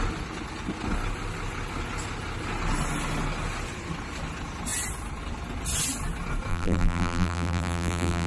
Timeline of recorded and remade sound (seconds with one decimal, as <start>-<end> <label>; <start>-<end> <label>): 0.0-6.5 recorded; 6.5-8.3 remade